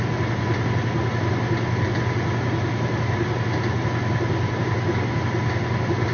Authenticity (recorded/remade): recorded